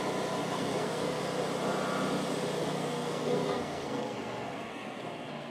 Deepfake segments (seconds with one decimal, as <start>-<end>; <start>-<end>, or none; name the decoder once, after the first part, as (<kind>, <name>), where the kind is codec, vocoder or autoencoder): 0.4-1.2 (codec, SNAC); 2.6-5.5